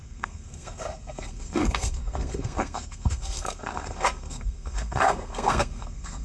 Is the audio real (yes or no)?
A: no